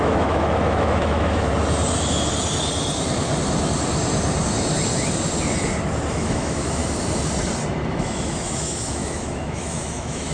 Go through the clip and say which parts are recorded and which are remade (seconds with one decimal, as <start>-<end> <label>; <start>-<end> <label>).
0.0-1.5 remade; 1.5-6.1 recorded; 6.1-6.8 remade; 6.8-7.9 recorded; 7.9-10.3 remade